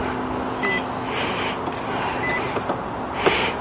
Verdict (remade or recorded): recorded